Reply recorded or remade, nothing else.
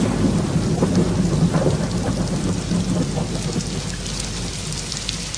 recorded